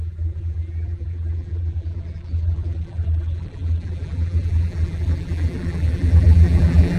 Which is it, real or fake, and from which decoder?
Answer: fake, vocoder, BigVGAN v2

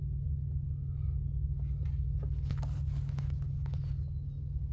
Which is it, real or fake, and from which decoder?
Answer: real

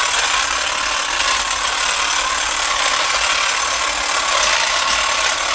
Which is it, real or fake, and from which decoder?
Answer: real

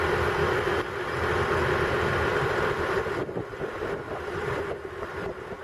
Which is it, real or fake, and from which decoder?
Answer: real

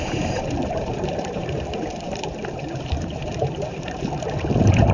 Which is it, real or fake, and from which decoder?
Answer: fake, vocoder, BigVGAN v2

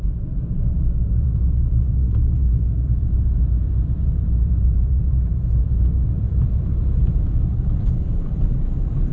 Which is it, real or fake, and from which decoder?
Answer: fake, vocoder, BigVGAN v2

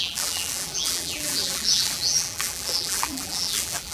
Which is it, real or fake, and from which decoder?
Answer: fake, vocoder, BigVGAN v2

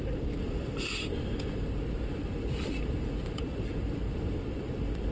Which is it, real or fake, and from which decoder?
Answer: fake, vocoder, BigVGAN v2